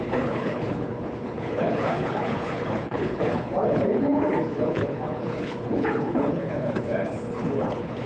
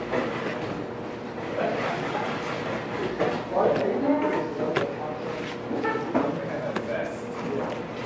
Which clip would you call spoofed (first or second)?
first